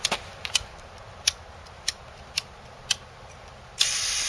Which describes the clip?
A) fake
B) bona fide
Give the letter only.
B